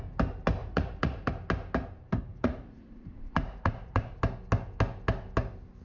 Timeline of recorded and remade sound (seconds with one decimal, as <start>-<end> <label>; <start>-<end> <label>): 0.0-0.6 recorded; 0.6-1.3 remade; 1.3-2.3 recorded; 2.3-4.2 remade; 4.2-5.8 recorded